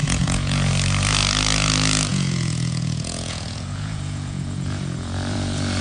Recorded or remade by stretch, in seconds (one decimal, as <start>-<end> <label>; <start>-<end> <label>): 0.0-0.7 remade; 0.7-2.1 recorded; 2.1-5.8 remade